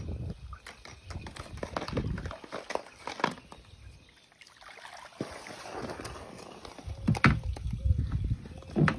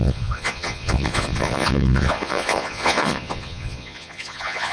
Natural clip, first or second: first